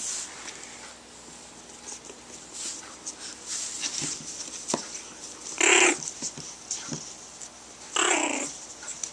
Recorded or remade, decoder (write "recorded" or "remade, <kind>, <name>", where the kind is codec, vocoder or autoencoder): recorded